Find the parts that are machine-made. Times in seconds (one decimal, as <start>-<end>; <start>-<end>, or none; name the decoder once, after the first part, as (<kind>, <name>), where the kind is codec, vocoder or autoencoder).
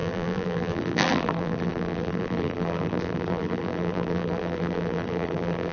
0.0-5.7 (vocoder, BigVGAN v2)